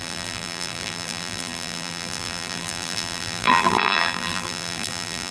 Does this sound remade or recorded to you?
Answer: remade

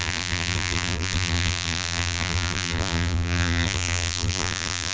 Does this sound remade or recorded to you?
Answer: remade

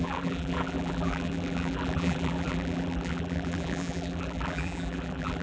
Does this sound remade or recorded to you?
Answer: remade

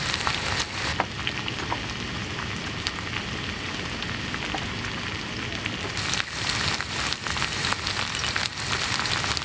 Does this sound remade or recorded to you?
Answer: recorded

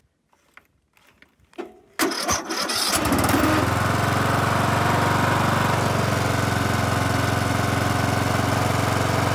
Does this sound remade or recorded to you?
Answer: recorded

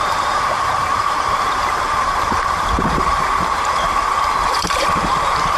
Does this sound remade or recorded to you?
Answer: remade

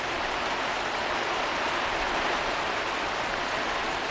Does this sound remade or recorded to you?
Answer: recorded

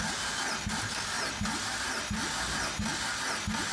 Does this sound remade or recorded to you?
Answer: recorded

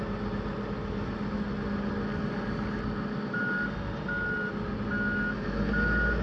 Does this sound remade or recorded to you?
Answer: recorded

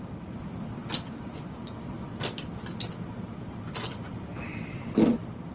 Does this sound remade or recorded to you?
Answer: recorded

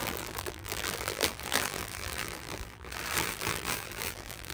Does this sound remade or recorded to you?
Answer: remade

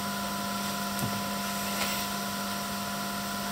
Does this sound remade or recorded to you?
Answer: recorded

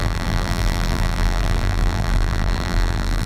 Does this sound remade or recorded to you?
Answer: remade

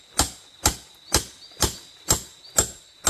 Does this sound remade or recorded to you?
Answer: recorded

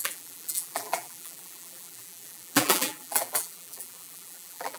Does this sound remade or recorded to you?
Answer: remade